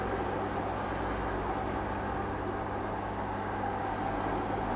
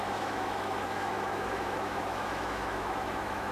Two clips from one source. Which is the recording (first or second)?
first